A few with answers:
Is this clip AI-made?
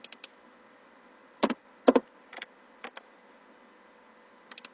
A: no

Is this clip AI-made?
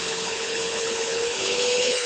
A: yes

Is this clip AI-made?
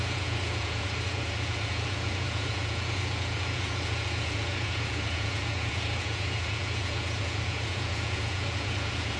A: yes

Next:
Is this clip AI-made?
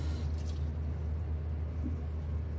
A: no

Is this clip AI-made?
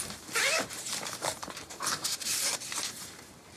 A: yes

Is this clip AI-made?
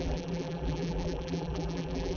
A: yes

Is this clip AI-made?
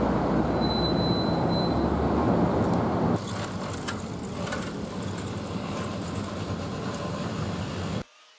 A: no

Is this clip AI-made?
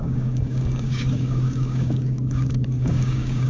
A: yes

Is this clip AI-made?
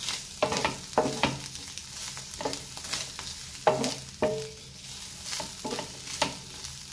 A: no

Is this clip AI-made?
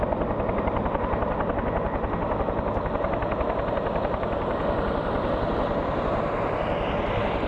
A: no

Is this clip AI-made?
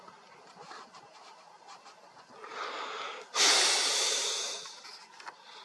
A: no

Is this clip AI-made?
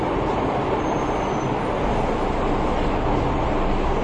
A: no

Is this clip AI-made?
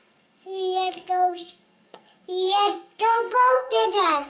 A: yes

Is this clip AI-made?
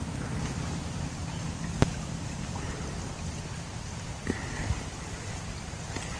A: no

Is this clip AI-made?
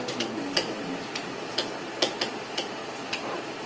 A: no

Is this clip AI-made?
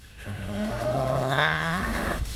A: yes